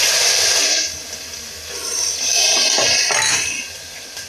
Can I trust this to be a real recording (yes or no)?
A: yes